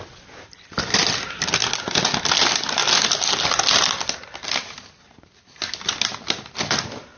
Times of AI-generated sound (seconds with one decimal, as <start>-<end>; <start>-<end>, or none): none

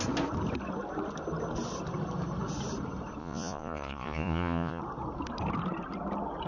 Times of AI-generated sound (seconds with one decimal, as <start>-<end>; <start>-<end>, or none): 3.2-4.8